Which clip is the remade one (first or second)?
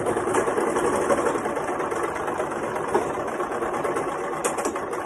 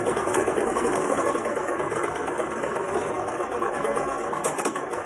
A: second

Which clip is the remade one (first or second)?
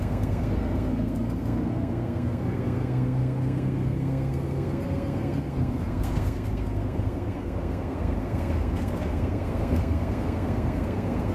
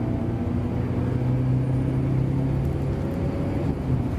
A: first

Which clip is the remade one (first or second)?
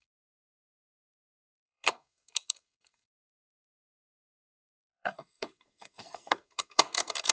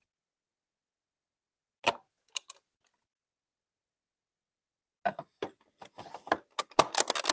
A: first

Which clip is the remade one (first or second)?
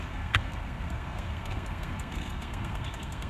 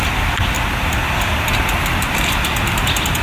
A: first